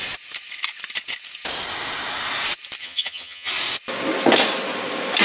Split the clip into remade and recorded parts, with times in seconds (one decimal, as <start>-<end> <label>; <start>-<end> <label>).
0.0-2.8 recorded; 2.8-3.5 remade; 3.5-5.2 recorded